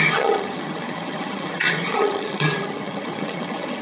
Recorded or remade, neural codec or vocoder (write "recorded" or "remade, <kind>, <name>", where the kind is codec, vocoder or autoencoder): remade, vocoder, HiFi-GAN